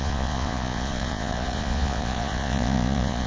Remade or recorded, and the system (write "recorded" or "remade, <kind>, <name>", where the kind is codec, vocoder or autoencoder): remade, vocoder, Vocos